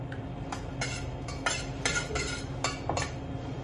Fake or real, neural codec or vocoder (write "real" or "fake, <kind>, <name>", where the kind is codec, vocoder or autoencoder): real